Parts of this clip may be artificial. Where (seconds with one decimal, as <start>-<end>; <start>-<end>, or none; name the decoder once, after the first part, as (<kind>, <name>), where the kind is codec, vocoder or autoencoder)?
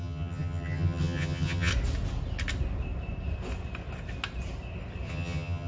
0.0-1.7 (vocoder, HiFi-GAN); 5.1-5.7